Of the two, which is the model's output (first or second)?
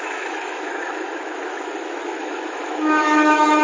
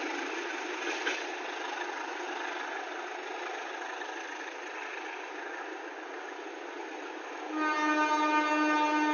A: first